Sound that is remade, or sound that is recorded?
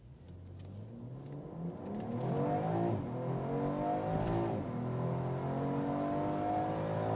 recorded